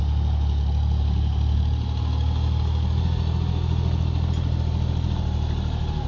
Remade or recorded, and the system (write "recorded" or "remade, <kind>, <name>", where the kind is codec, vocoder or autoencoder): recorded